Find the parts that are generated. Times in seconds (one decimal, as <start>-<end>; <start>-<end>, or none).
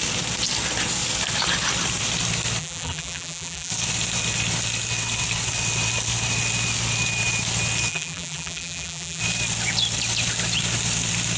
2.6-3.7; 7.9-9.2